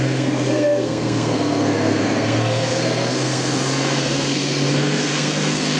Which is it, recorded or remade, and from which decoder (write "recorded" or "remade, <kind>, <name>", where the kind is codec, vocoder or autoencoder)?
remade, codec, SNAC